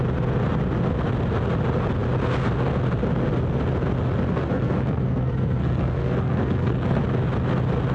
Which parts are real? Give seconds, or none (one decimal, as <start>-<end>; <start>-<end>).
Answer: 0.0-4.3; 7.0-7.9